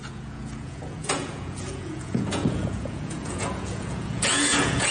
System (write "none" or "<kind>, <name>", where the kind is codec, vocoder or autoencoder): vocoder, Vocos